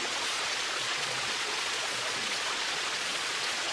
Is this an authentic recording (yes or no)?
no